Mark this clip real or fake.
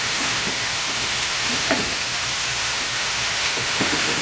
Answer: fake